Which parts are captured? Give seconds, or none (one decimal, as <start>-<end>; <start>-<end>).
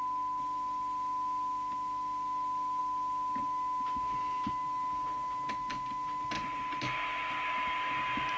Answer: 0.0-8.4